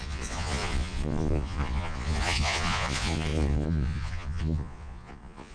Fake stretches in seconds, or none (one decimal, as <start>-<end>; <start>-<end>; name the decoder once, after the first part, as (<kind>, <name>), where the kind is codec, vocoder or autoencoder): 0.0-5.5 (vocoder, Vocos)